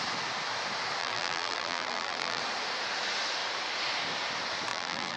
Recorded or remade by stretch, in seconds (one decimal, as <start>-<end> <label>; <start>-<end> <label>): 0.0-1.0 recorded; 1.0-2.4 remade; 2.4-4.7 recorded; 4.7-5.2 remade